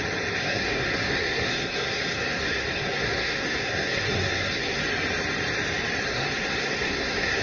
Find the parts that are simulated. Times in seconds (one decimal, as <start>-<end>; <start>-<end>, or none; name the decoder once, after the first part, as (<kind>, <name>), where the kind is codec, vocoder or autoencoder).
0.4-4.8 (codec, SNAC); 6.1-7.4